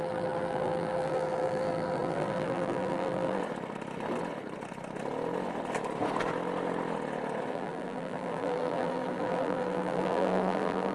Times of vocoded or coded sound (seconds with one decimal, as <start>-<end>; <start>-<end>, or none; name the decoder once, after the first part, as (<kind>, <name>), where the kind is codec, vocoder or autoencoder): 0.0-3.4 (vocoder, BigVGAN v2); 7.5-10.9

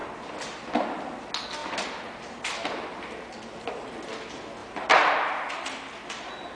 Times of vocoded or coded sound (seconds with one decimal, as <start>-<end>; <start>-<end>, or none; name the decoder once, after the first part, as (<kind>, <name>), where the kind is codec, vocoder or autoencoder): 0.0-0.7 (vocoder, BigVGAN v2); 1.6-2.5; 4.6-5.5

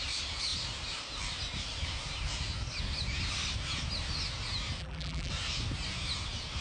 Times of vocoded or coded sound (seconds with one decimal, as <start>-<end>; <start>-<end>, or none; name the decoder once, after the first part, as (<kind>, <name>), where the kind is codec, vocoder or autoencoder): 4.8-5.3 (vocoder, BigVGAN v2)

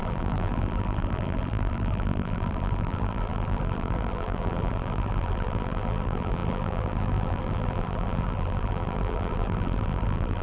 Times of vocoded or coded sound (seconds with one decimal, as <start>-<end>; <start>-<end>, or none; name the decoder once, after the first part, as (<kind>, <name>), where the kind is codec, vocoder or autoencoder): 0.0-10.4 (vocoder, BigVGAN v2)

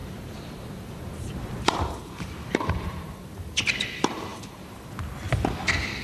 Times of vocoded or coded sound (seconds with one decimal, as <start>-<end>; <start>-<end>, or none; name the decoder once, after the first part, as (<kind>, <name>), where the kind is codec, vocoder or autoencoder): 0.0-3.6 (vocoder, BigVGAN v2); 4.3-4.9